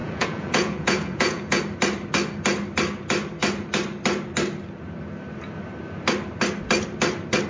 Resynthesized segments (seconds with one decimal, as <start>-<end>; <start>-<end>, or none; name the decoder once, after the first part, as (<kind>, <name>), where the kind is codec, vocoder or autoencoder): 0.0-1.6 (vocoder, Vocos)